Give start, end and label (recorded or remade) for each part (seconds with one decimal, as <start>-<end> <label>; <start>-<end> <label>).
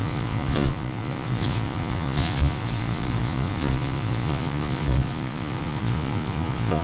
0.0-6.8 remade